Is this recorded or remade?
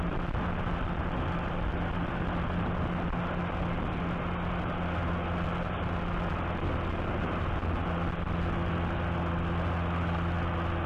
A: recorded